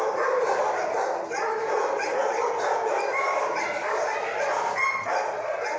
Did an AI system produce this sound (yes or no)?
no